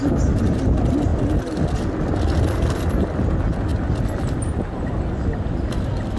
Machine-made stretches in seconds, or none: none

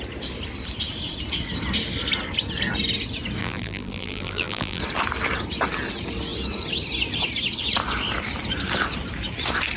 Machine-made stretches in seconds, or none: 3.4-4.8 (vocoder, BigVGAN v2)

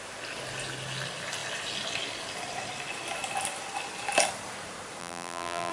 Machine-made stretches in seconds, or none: 5.0-5.7 (vocoder, BigVGAN v2)

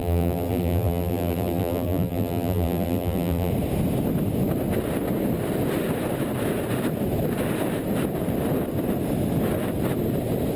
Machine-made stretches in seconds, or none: 0.0-3.5 (vocoder, BigVGAN v2)

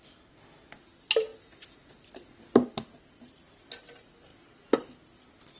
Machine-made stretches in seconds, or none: none

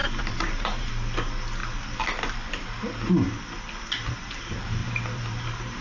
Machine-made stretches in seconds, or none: 0.0-0.9 (vocoder, BigVGAN v2); 4.8-5.8